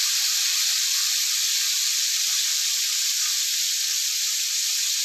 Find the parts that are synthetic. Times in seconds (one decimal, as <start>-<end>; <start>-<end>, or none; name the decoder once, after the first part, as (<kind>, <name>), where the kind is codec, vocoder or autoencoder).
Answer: 0.4-2.8 (vocoder, BigVGAN v2)